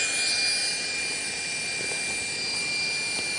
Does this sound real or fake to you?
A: real